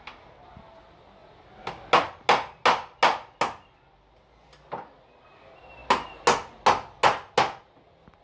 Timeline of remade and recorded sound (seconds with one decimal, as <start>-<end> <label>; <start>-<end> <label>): 0.0-8.2 recorded